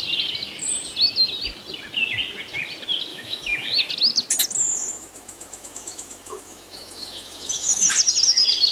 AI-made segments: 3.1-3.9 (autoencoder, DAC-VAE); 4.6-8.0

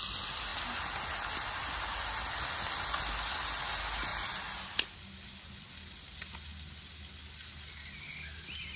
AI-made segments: none

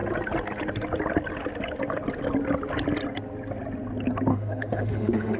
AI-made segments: 4.3-5.4 (autoencoder, DAC-VAE)

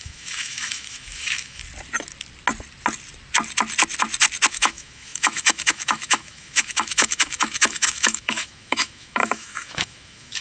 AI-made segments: 0.0-1.6 (autoencoder, DAC-VAE); 4.5-10.4

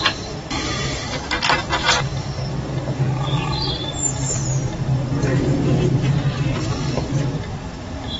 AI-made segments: none

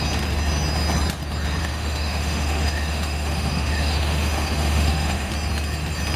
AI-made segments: 1.6-5.3 (autoencoder, DAC-VAE)